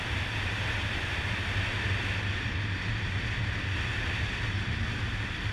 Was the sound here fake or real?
real